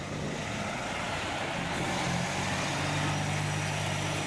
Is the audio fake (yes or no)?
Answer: no